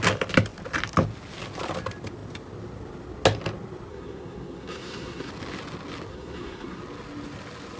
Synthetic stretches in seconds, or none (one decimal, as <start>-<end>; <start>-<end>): 3.9-5.3; 6.1-6.8